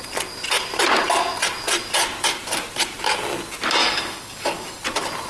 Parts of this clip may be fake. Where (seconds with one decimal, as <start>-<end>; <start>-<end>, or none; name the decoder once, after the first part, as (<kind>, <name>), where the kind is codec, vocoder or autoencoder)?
3.8-4.8 (codec, DAC)